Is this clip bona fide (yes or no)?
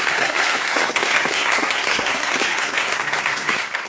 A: no